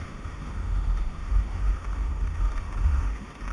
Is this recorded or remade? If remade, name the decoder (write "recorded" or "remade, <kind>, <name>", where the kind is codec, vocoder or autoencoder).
remade, autoencoder, DAC-VAE